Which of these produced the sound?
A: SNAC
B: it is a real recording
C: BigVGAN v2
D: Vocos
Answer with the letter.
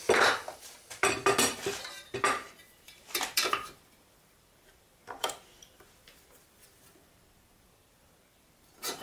C